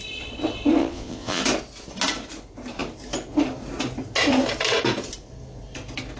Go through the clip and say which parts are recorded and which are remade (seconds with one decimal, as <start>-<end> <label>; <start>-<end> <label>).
0.0-0.8 recorded; 0.8-1.4 remade; 1.4-6.2 recorded